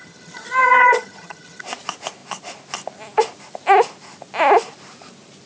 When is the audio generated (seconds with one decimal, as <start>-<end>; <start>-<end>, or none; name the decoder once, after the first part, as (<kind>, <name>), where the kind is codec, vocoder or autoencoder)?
0.0-1.6 (vocoder, HiFi-GAN)

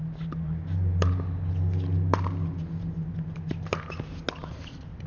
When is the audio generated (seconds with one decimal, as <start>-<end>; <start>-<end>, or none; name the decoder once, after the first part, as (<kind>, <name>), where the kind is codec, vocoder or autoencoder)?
none